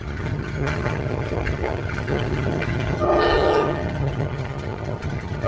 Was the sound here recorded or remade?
remade